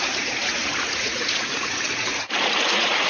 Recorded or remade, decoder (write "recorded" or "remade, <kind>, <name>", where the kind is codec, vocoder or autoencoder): remade, vocoder, Vocos